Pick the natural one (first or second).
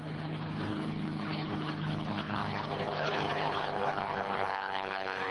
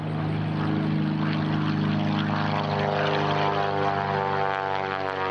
second